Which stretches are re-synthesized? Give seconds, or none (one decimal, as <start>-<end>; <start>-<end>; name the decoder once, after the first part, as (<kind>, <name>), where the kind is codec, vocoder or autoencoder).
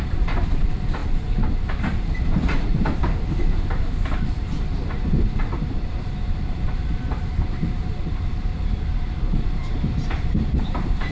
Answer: 0.0-11.1 (vocoder, BigVGAN v2)